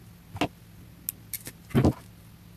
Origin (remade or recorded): recorded